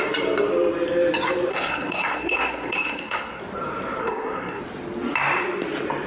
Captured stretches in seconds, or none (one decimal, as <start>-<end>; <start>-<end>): 0.0-1.5; 3.4-4.0; 4.6-6.1